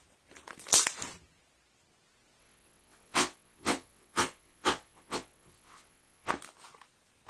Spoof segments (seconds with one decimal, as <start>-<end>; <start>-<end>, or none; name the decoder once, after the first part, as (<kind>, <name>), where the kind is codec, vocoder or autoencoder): 2.4-6.3 (vocoder, WaveNeXt)